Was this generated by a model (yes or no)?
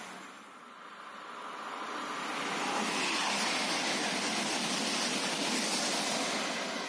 no